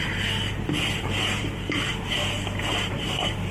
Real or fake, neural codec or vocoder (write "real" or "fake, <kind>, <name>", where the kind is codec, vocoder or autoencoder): fake, vocoder, BigVGAN v2